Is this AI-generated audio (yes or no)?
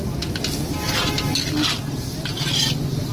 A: no